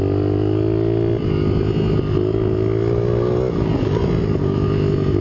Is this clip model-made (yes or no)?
no